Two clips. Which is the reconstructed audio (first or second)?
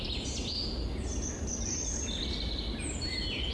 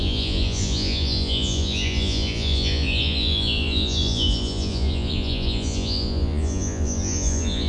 second